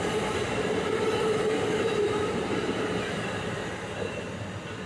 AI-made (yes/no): yes